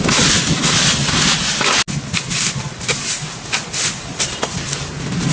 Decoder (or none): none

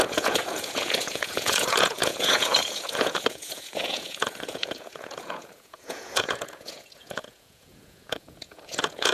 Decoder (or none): vocoder, Vocos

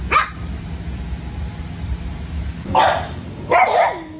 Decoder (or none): none